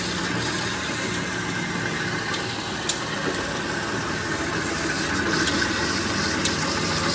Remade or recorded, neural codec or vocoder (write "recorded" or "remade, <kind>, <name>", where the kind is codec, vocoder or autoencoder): recorded